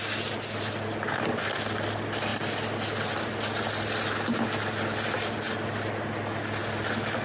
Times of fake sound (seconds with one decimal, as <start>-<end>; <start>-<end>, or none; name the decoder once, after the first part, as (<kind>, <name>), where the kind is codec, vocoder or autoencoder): none